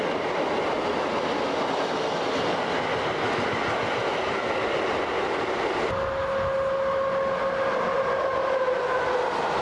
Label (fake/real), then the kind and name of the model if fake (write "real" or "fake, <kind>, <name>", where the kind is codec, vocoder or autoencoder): real